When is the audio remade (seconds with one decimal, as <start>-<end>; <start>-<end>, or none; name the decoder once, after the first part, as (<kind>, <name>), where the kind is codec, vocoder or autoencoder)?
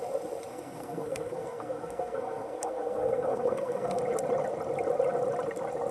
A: 0.5-4.0 (codec, SNAC)